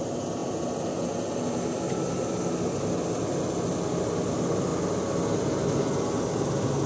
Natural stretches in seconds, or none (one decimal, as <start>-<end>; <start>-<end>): 0.0-6.9